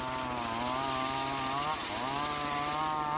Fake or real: real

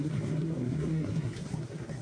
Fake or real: fake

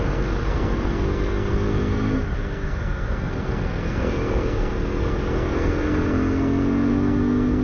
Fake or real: fake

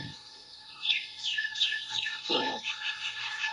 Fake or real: fake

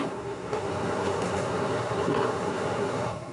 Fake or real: fake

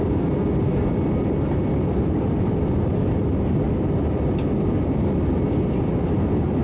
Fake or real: real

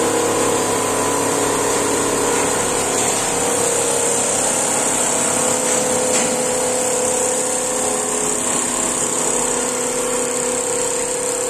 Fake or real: real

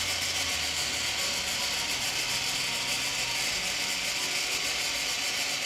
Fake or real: real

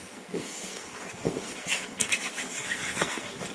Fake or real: fake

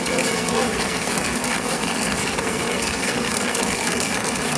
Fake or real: fake